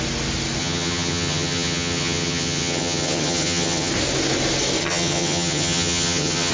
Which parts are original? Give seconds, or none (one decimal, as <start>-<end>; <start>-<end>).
0.0-0.6; 3.9-4.8